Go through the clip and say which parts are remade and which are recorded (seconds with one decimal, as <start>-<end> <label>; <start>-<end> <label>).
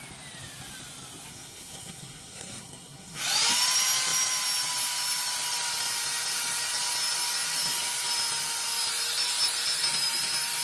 0.0-1.3 recorded; 1.3-3.2 remade; 3.2-10.6 recorded